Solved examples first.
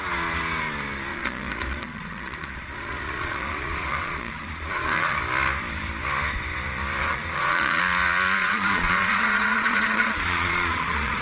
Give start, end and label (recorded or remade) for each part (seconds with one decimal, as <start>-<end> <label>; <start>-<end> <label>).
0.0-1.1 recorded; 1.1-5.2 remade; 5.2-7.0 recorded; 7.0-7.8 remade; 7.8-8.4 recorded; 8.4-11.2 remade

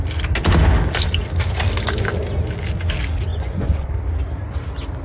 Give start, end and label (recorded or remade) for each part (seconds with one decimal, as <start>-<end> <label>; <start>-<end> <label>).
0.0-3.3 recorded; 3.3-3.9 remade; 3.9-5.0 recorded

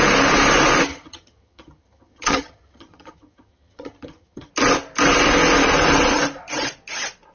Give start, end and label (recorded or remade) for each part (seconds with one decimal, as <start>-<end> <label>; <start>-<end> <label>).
0.0-0.9 recorded; 0.9-4.5 remade; 4.5-7.3 recorded

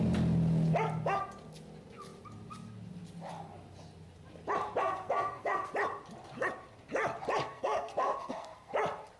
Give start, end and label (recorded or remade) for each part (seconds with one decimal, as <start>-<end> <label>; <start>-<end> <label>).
0.0-4.8 recorded; 4.8-5.7 remade; 5.7-7.4 recorded; 7.4-8.7 remade; 8.7-9.2 recorded

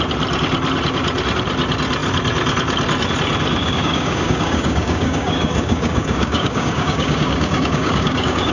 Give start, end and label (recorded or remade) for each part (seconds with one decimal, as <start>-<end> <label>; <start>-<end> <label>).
0.0-3.6 recorded; 3.6-8.5 remade

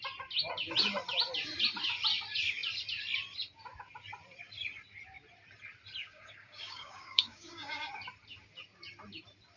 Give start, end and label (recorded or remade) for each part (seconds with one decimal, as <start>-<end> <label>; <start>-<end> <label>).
0.0-6.0 recorded; 6.0-7.9 remade; 7.9-9.6 recorded

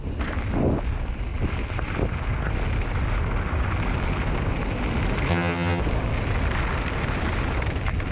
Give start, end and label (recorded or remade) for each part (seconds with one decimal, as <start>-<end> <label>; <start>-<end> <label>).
0.0-5.3 recorded; 5.3-5.8 remade; 5.8-8.1 recorded